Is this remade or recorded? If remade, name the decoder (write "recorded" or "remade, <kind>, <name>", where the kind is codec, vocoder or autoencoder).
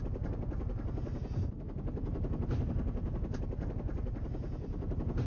recorded